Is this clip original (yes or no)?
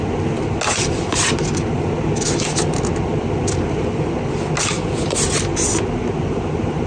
yes